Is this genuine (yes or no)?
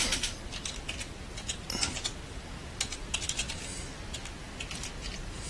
yes